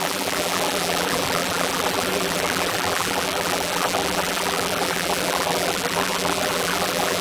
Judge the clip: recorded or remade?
remade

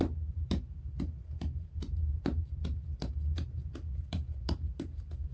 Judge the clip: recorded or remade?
remade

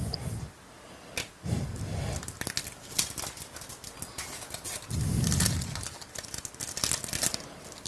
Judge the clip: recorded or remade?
recorded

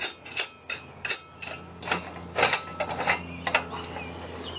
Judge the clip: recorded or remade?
recorded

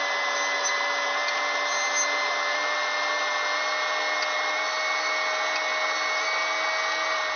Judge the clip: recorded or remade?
recorded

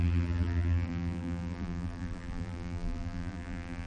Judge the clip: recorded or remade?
remade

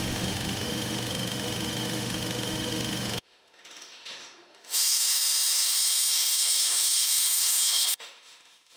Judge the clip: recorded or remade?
remade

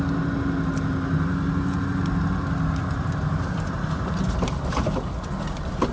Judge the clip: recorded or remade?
recorded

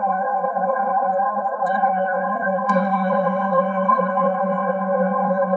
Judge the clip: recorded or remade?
remade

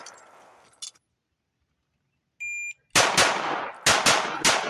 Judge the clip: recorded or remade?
recorded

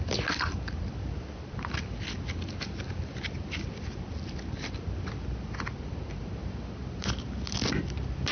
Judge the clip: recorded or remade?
recorded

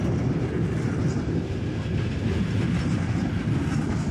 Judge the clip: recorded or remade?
recorded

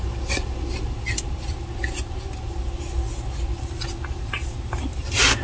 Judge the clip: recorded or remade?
recorded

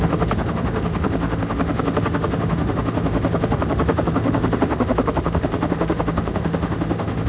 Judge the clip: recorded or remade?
remade